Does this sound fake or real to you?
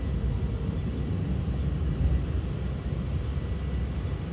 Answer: real